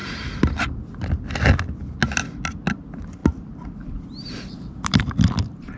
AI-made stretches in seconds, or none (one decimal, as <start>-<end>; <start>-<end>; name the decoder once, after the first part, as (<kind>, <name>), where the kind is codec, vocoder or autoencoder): none